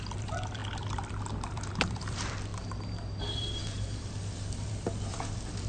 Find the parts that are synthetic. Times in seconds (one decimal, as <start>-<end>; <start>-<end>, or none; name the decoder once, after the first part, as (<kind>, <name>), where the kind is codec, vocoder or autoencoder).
0.0-2.5 (vocoder, BigVGAN v2); 3.2-5.7